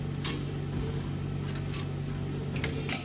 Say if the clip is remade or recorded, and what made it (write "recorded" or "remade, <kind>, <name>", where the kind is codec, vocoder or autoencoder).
recorded